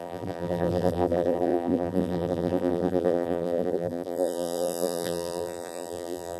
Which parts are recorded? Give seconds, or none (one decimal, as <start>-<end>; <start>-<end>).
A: none